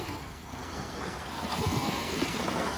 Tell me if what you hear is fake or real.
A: fake